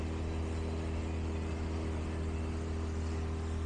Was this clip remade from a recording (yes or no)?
no